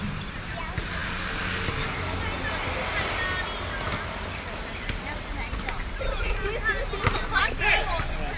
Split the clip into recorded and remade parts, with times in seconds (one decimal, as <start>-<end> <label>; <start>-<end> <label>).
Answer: 0.0-8.4 recorded